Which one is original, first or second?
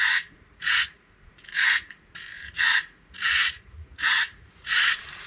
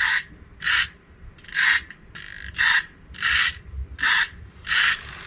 second